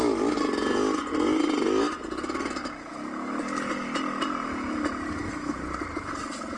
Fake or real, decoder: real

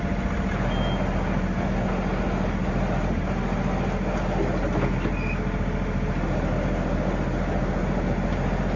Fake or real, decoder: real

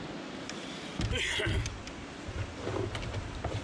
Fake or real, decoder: real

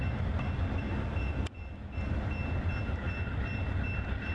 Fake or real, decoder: fake, vocoder, BigVGAN v2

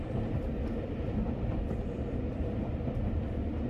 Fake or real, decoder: fake, vocoder, BigVGAN v2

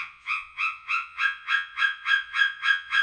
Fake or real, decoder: fake, vocoder, Vocos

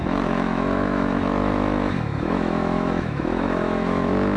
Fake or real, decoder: fake, autoencoder, DAC-VAE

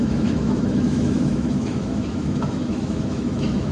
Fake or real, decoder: fake, autoencoder, DAC-VAE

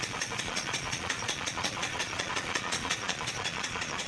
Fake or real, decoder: fake, vocoder, Vocos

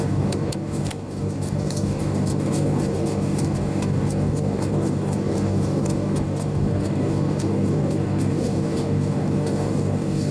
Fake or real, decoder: fake, codec, DAC